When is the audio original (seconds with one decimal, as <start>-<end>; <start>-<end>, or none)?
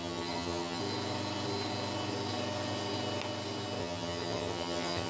0.8-3.8